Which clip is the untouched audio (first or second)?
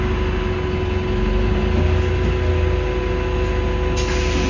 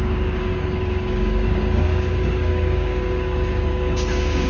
first